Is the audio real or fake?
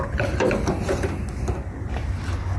real